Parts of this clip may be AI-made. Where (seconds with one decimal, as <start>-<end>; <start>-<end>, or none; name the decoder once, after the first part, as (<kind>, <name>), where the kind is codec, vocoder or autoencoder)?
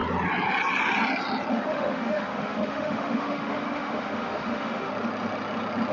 1.5-4.9 (autoencoder, DAC-VAE)